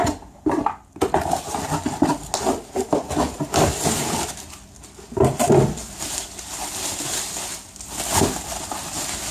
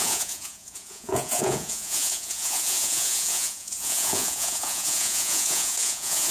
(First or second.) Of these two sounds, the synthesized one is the second